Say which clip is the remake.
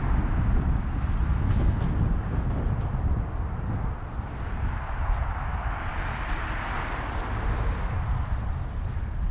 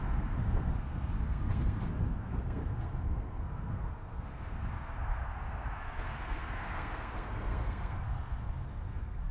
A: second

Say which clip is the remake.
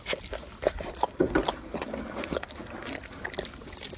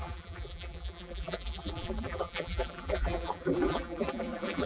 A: second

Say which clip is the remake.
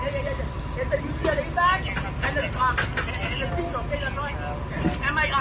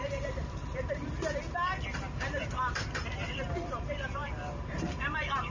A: second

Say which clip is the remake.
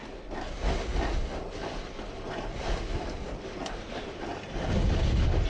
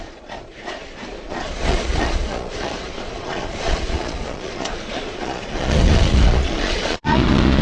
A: second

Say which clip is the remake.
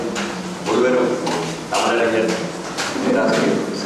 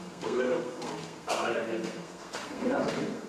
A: second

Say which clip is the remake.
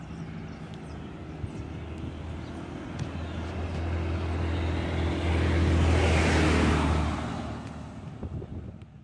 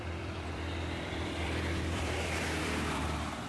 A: second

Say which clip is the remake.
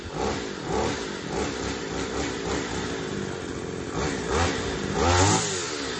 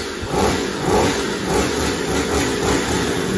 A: second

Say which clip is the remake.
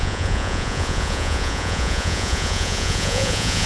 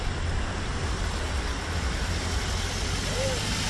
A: first